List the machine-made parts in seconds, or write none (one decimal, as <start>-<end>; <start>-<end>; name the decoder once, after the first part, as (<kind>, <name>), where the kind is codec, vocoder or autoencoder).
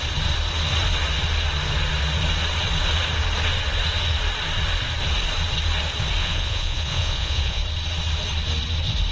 6.2-7.6 (vocoder, Vocos)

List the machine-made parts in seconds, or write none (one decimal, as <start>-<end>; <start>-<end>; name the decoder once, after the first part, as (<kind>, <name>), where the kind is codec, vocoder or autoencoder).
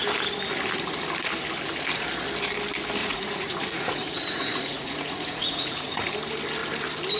3.0-6.0 (vocoder, Vocos)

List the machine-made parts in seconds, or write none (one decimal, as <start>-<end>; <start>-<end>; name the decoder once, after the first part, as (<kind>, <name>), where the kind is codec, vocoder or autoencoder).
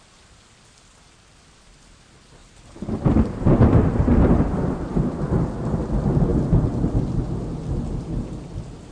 2.4-5.2 (vocoder, BigVGAN v2)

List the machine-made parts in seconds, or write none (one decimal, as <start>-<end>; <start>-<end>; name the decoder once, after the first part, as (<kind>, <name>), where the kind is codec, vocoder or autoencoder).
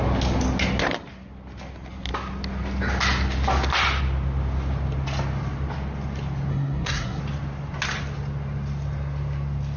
6.5-7.2 (codec, SNAC)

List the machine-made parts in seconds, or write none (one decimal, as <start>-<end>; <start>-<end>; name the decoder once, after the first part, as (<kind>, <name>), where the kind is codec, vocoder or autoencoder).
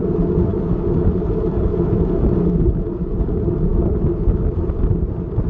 none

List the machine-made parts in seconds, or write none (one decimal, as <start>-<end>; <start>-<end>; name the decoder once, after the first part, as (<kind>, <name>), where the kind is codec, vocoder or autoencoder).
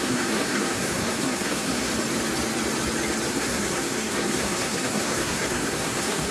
0.0-1.9 (codec, SNAC); 3.3-6.3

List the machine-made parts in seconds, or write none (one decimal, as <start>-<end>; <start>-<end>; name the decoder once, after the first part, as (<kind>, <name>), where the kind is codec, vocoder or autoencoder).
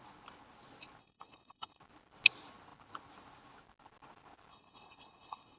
1.0-1.8 (codec, HILCodec); 4.5-5.6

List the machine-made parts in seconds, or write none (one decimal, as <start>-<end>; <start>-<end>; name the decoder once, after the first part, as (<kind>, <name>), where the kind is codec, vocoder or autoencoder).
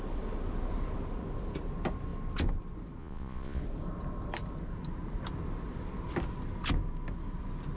3.0-3.6 (vocoder, Vocos)